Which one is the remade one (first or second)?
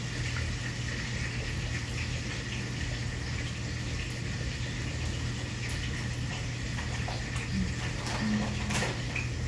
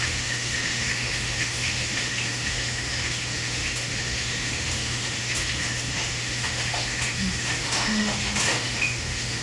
second